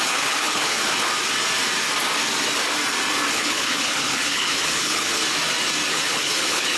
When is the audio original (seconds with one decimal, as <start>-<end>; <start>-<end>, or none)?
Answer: 0.8-3.3; 5.2-5.9